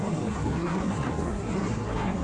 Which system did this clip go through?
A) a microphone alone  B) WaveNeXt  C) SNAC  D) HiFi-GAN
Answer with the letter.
C